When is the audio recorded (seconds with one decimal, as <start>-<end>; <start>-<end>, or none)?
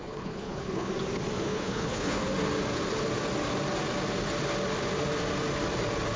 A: 0.9-1.4; 2.2-6.2